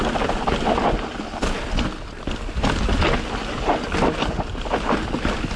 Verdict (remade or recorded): recorded